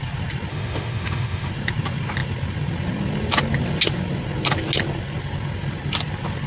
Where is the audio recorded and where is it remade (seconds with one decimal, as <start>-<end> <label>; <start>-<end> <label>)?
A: 0.0-0.5 recorded; 0.5-1.5 remade; 1.5-6.5 recorded

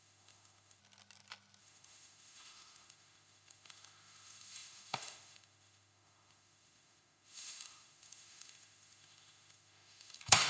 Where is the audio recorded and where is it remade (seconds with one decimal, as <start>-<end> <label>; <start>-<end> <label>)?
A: 0.0-0.8 remade; 0.8-1.6 recorded; 1.6-10.5 remade

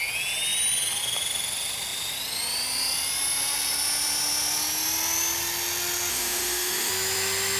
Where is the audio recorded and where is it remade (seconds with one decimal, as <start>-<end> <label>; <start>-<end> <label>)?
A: 0.0-6.1 recorded; 6.1-6.9 remade; 6.9-7.6 recorded